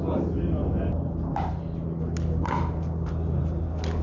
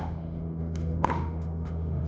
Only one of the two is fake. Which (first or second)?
second